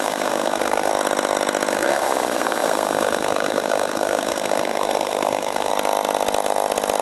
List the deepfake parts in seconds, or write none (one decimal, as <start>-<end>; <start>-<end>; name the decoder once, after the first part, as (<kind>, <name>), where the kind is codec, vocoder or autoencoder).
0.0-0.9 (codec, SNAC); 1.7-5.7